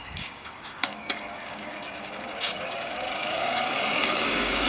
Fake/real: fake